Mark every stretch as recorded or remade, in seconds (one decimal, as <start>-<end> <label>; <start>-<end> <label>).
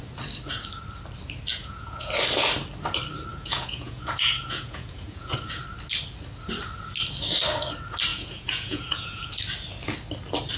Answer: 0.0-1.5 recorded; 1.5-2.1 remade; 2.1-3.3 recorded; 3.3-5.5 remade; 5.5-8.1 recorded; 8.1-9.3 remade; 9.3-10.6 recorded